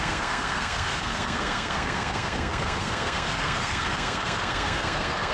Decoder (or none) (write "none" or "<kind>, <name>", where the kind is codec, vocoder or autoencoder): codec, SNAC